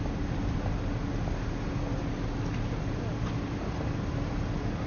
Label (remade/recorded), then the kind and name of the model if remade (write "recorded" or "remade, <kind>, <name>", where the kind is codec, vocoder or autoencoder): recorded